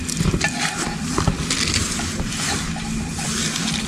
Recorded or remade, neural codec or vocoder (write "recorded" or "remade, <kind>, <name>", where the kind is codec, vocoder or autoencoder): recorded